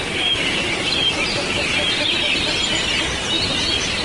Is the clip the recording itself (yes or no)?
yes